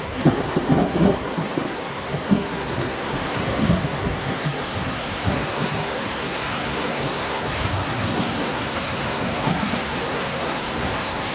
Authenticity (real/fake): fake